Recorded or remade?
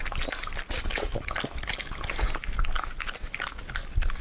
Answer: recorded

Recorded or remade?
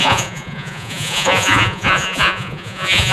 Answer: remade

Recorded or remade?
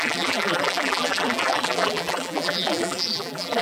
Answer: remade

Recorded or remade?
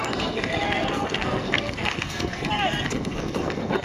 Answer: remade